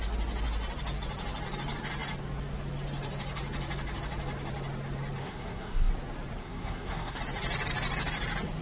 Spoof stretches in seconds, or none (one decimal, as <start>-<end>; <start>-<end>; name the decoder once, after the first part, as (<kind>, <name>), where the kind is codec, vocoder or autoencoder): 5.2-5.9 (codec, SNAC); 6.4-7.2

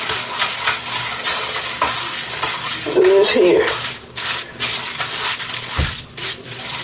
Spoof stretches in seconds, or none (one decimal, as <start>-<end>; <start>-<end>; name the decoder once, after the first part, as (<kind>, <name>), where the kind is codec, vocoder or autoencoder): none

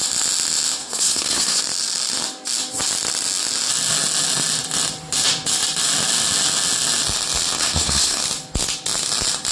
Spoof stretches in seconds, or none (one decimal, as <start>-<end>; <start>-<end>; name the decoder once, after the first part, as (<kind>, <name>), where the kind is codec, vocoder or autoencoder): 0.8-1.6 (codec, SNAC); 7.6-8.2